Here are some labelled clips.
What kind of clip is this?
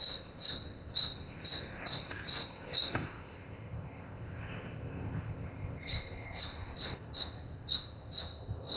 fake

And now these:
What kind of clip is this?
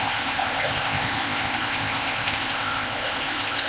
fake